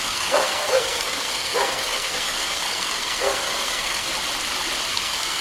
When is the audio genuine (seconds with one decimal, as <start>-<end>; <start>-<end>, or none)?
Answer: 4.1-4.9